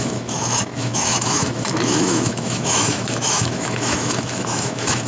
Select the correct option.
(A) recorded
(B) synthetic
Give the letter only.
B